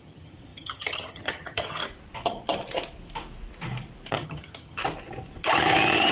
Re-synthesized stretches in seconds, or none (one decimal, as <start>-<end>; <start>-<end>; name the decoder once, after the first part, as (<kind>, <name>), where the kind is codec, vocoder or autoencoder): 0.0-1.8 (vocoder, HiFi-GAN); 4.1-4.8